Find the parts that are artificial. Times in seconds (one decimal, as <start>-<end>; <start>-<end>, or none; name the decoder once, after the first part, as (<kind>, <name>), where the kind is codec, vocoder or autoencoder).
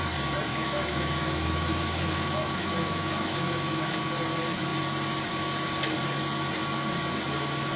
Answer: 0.5-3.9 (autoencoder, DAC-VAE)